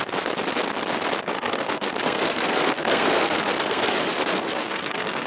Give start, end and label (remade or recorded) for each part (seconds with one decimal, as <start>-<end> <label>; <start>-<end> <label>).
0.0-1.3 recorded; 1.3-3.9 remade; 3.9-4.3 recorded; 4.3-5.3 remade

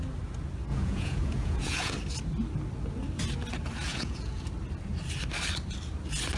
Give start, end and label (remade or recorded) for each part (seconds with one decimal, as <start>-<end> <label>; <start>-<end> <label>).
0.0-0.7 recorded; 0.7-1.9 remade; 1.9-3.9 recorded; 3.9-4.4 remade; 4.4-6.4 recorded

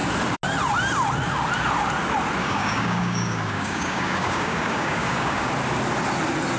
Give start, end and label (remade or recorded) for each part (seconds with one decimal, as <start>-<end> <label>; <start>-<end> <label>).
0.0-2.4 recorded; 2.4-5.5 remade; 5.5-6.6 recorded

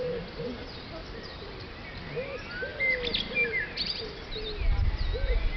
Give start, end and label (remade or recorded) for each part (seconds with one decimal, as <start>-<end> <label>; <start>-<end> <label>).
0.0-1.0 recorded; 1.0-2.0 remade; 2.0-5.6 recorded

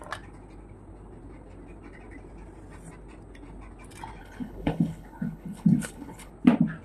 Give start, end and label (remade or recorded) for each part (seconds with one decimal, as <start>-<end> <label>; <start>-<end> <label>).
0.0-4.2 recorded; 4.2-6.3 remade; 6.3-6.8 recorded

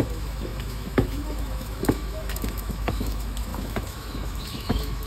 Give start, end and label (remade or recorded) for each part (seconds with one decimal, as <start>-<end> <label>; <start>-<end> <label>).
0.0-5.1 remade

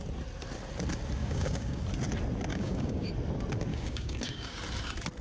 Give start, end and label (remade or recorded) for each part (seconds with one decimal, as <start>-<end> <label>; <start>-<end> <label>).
0.0-1.2 recorded; 1.2-1.8 remade; 1.8-2.5 recorded; 2.5-3.1 remade; 3.1-3.7 recorded; 3.7-4.6 remade; 4.6-5.2 recorded

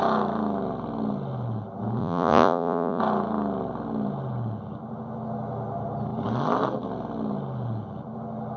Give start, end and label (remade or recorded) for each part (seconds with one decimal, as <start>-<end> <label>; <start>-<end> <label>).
0.0-2.0 recorded; 2.0-3.0 remade; 3.0-8.6 recorded